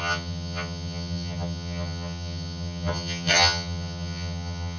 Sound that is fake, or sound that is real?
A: fake